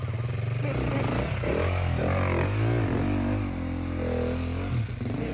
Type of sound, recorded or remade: recorded